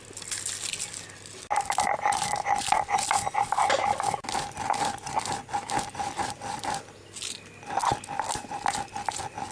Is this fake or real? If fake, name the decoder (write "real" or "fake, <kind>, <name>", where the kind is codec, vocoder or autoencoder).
real